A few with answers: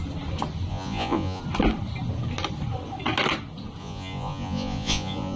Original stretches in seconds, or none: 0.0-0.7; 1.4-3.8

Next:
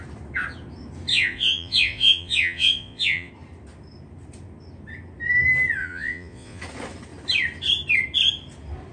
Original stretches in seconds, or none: 0.0-1.1; 3.3-5.8; 6.6-8.9

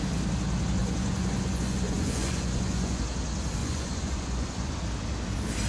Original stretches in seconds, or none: 0.0-0.8; 3.0-3.6; 4.8-5.7

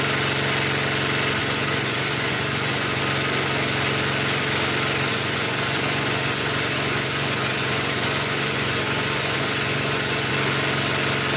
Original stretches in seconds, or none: 0.0-1.4; 3.0-5.1; 10.3-11.4

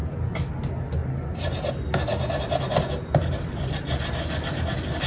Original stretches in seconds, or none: 0.0-5.1

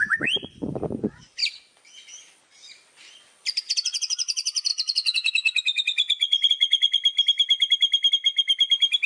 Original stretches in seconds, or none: 1.4-3.6; 7.0-9.1